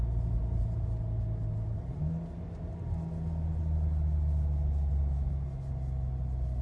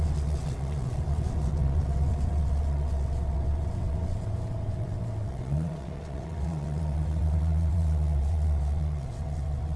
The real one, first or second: first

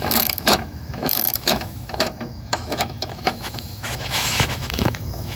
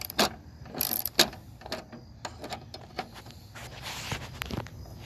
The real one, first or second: second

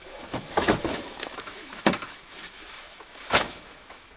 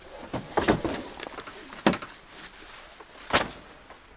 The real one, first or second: second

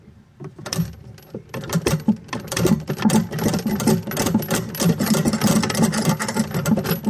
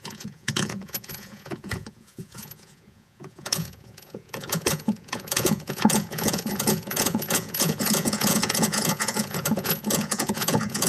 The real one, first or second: first